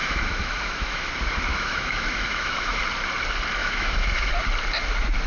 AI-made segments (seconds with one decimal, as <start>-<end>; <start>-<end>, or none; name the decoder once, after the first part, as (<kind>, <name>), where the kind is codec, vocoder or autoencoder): 0.0-1.1 (autoencoder, DAC-VAE); 1.5-2.8; 3.6-4.3